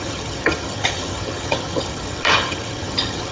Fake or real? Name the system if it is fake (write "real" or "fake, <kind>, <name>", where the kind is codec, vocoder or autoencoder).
fake, vocoder, HiFi-GAN